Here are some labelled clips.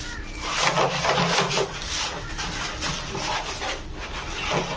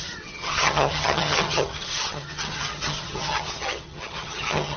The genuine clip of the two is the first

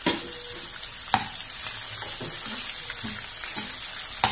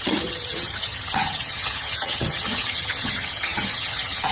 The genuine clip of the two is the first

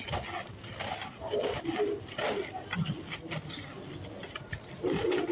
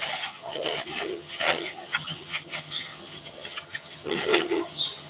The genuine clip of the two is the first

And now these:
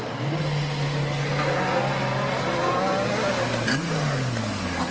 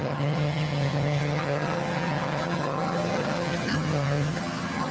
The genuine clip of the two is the first